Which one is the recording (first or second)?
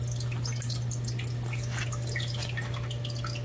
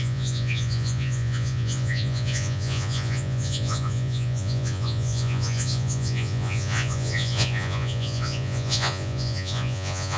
first